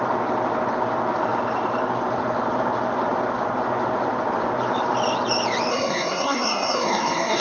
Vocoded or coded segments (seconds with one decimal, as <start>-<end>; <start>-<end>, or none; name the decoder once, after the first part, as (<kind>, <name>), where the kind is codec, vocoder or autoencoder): 5.7-7.4 (codec, SNAC)